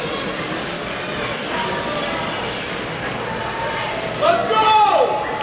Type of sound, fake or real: real